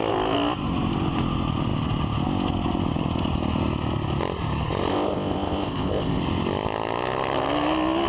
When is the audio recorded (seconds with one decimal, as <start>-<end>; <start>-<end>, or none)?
0.0-4.9; 6.2-8.1